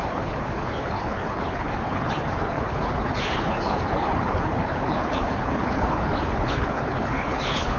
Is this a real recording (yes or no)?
no